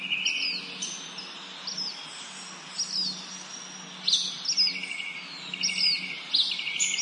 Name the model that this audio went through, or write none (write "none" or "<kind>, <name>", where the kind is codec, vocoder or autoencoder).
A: none